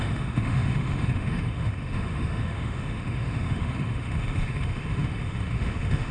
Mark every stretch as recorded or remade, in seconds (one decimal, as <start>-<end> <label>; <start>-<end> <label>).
0.0-6.1 remade

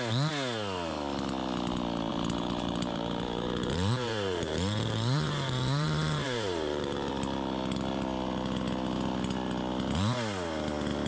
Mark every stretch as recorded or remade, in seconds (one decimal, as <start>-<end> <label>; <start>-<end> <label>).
0.0-2.1 recorded; 2.1-7.1 remade; 7.1-11.1 recorded

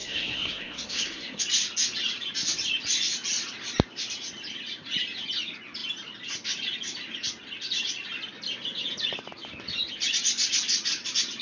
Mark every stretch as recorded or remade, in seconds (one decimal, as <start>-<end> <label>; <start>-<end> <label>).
0.0-1.4 remade; 1.4-11.4 recorded

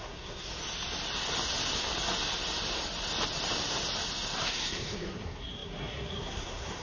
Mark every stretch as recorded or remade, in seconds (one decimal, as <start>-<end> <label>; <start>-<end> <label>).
0.0-0.5 remade; 0.5-4.4 recorded; 4.4-6.8 remade